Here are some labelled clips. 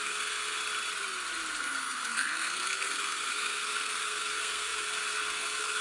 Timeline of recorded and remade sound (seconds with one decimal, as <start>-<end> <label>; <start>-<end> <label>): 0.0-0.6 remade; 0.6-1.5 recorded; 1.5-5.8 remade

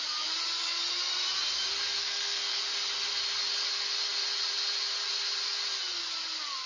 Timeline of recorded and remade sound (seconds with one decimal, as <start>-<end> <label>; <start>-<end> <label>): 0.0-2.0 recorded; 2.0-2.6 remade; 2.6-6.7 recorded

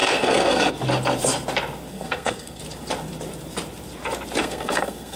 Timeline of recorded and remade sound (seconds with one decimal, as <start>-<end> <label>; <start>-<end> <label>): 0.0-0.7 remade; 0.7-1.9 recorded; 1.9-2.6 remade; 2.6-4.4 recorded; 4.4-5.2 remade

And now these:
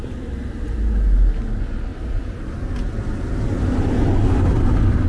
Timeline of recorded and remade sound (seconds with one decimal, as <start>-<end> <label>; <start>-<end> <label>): 0.0-5.1 recorded

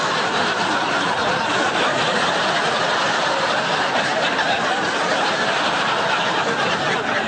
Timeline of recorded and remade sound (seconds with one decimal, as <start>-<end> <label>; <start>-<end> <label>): 0.0-7.3 recorded

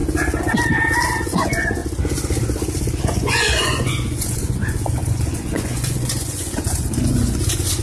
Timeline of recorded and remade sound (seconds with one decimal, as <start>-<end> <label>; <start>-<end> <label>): 0.0-1.2 recorded; 1.2-1.8 remade; 1.8-3.0 recorded; 3.0-7.8 remade

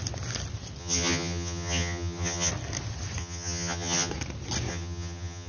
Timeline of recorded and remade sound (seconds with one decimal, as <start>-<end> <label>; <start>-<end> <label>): 0.0-0.8 recorded; 0.8-2.5 remade; 2.5-3.2 recorded; 3.2-4.1 remade; 4.1-4.7 recorded; 4.7-5.5 remade